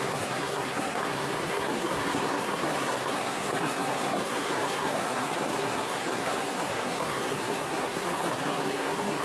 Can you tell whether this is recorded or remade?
remade